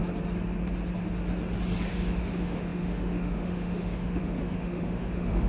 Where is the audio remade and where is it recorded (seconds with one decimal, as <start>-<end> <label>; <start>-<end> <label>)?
0.0-1.9 recorded; 1.9-5.5 remade